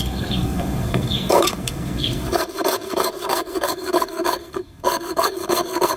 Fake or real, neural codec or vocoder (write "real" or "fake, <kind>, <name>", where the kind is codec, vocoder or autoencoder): fake, codec, SNAC